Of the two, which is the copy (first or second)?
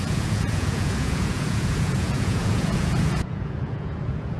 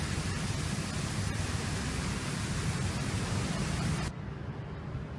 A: first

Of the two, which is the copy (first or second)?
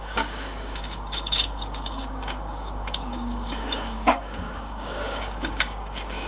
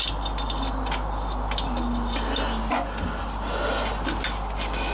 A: first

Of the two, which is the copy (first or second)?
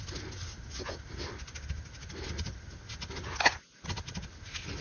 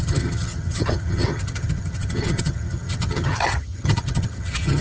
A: second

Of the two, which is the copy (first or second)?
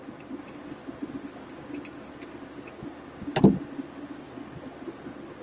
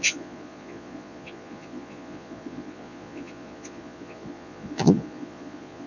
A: second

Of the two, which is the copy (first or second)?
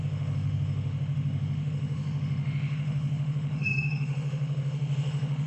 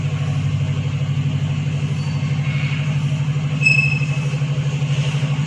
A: first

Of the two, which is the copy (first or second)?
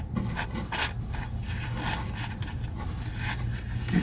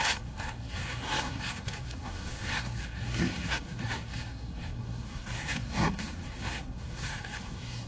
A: second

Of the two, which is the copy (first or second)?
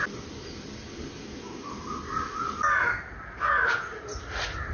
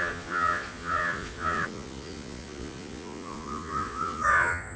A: second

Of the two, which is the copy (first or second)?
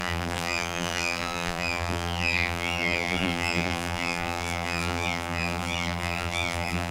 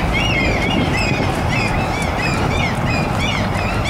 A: first